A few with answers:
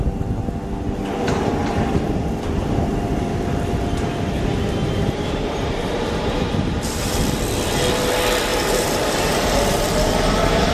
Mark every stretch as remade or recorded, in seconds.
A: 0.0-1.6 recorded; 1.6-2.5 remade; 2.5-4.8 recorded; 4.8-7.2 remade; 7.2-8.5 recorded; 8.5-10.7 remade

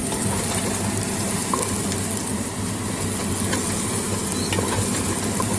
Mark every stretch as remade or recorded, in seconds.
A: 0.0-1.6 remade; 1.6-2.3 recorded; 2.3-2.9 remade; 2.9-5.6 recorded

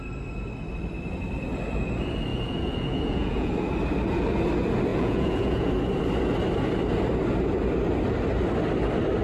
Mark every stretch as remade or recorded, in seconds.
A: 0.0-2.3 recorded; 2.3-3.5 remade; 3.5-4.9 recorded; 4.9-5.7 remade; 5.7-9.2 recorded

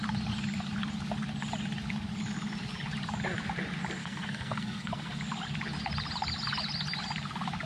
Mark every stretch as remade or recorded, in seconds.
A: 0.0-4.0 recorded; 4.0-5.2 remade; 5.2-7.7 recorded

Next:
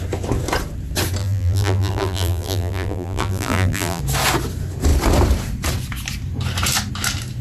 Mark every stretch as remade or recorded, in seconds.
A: 0.0-1.2 recorded; 1.2-4.0 remade; 4.0-7.4 recorded

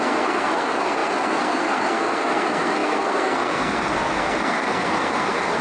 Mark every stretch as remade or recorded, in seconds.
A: 0.0-5.6 remade

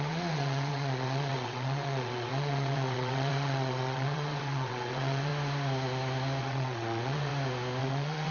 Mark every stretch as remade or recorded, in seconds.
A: 0.0-5.3 remade; 5.3-6.4 recorded; 6.4-7.3 remade; 7.3-7.8 recorded; 7.8-8.3 remade